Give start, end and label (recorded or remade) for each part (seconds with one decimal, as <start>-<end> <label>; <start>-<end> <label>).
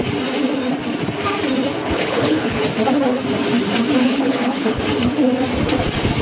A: 0.0-1.8 recorded; 1.8-2.6 remade; 2.6-4.0 recorded; 4.0-4.8 remade; 4.8-6.2 recorded